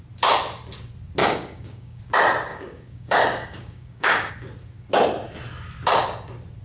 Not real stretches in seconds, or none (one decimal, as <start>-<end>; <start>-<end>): 1.2-2.0; 2.5-4.3